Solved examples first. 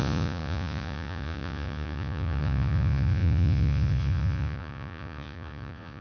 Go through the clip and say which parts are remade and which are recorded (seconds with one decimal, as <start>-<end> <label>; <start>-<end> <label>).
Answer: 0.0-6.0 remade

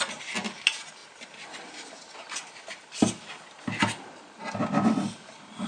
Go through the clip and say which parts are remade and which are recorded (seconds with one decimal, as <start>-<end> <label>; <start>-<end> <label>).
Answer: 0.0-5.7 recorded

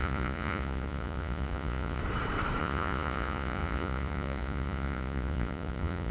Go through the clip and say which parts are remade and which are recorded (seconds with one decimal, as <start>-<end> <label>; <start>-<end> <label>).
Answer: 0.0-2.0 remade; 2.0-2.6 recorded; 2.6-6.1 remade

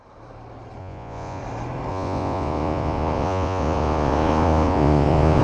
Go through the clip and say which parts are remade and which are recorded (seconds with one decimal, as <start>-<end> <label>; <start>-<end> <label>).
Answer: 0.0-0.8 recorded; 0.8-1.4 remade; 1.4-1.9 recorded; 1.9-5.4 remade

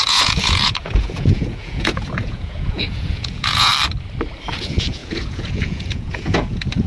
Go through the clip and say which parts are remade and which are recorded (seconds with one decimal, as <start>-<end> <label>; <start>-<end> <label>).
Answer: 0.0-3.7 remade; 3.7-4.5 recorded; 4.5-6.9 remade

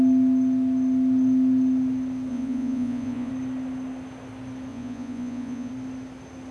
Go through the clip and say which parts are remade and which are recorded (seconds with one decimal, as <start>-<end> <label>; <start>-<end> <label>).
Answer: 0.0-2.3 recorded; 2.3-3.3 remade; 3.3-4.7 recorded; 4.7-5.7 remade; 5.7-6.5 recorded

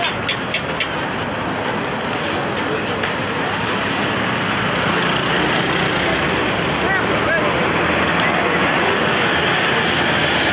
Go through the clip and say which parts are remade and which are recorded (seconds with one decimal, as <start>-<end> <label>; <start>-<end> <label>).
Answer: 0.0-8.3 recorded; 8.3-9.1 remade; 9.1-10.5 recorded

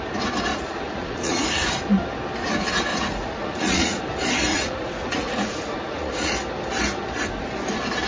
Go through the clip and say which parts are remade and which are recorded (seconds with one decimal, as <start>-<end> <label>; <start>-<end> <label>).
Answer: 0.0-0.5 recorded; 0.5-1.7 remade; 1.7-2.9 recorded; 2.9-4.0 remade; 4.0-4.5 recorded; 4.5-6.3 remade; 6.3-8.1 recorded